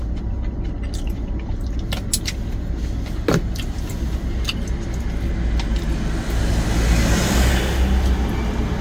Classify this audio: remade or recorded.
recorded